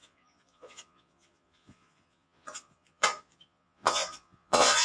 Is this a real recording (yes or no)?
no